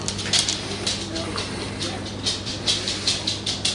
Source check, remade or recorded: recorded